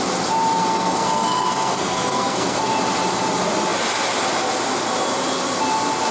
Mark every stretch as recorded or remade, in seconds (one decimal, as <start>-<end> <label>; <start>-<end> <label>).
0.0-0.6 recorded; 0.6-2.8 remade; 2.8-6.1 recorded